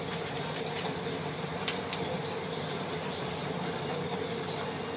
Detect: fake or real real